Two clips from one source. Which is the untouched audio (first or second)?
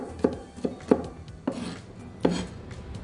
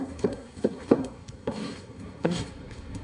first